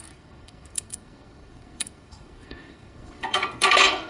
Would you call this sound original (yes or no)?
no